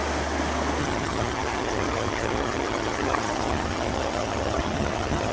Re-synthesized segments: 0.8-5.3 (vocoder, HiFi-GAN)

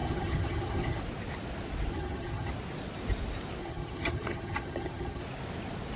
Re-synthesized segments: 0.0-1.0 (vocoder, HiFi-GAN); 1.9-2.5; 3.6-5.2

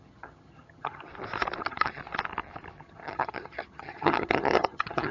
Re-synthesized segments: 0.0-1.1 (vocoder, HiFi-GAN); 1.6-2.0; 2.8-5.1

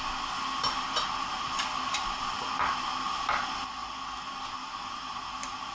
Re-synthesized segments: none

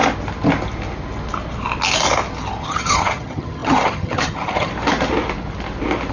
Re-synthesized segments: 2.6-4.7 (vocoder, HiFi-GAN)

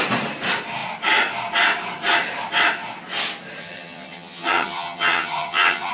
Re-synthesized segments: 3.6-5.9 (vocoder, HiFi-GAN)

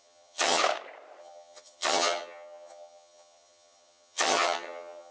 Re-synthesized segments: 0.0-0.6 (vocoder, HiFi-GAN); 1.2-5.1

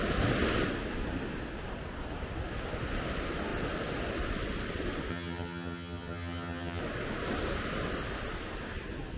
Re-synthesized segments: 5.1-6.8 (vocoder, HiFi-GAN)